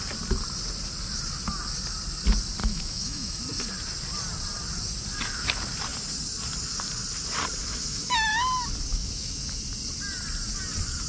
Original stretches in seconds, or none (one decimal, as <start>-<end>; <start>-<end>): 0.0-2.6; 3.4-7.6; 8.3-8.9; 9.6-11.1